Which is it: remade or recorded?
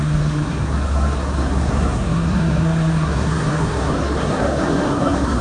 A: remade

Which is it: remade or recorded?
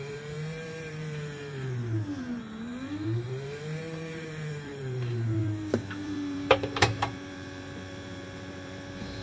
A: remade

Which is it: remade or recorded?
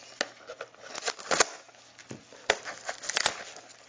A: recorded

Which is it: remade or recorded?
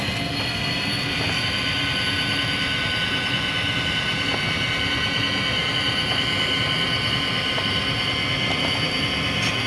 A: recorded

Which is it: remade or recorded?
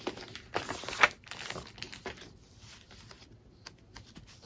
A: recorded